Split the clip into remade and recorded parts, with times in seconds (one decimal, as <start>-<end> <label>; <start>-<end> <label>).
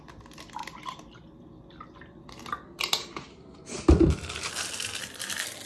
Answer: 0.0-5.7 recorded